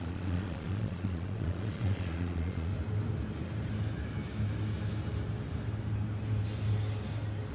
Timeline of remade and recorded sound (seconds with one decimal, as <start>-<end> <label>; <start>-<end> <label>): 0.0-2.7 remade; 2.7-7.5 recorded